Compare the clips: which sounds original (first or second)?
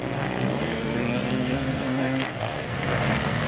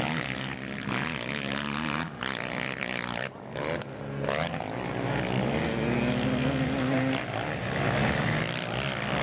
second